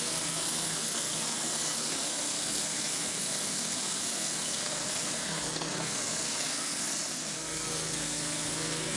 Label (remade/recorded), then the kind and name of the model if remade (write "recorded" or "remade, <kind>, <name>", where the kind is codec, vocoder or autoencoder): remade, codec, SNAC